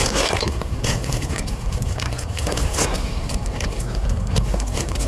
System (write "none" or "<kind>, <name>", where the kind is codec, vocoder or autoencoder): codec, SNAC